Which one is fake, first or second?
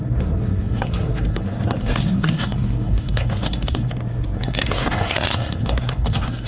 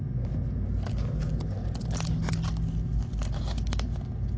first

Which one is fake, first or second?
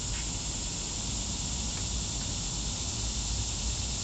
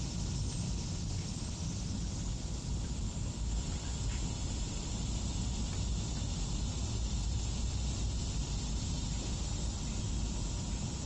second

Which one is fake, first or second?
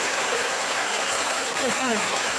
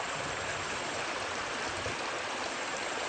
first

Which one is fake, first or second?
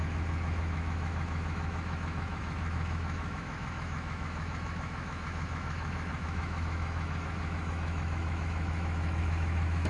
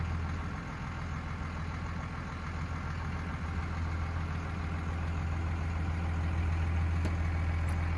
first